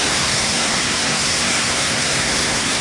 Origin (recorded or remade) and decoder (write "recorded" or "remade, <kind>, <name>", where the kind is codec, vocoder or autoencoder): remade, codec, SNAC